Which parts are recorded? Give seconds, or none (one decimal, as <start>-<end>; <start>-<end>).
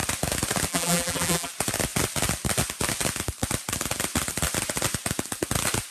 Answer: 0.0-0.7; 1.5-5.9